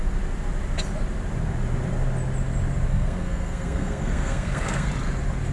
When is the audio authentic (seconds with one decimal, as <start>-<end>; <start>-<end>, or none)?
0.0-2.9; 4.9-5.5